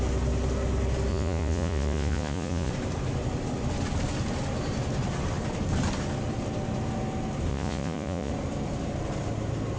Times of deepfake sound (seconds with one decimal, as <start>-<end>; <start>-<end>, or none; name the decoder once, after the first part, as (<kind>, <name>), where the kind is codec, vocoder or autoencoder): 1.1-2.7 (vocoder, Vocos); 7.5-8.3